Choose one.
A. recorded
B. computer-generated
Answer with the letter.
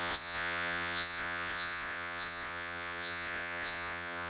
B